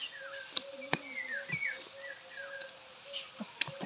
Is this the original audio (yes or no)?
yes